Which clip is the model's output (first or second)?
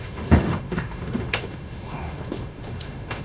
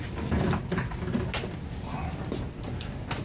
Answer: first